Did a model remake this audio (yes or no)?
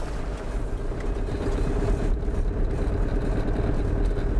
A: no